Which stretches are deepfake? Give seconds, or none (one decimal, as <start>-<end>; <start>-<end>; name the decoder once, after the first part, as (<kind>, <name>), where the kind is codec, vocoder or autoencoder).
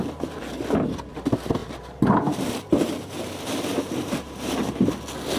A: 1.6-4.8 (vocoder, BigVGAN v2)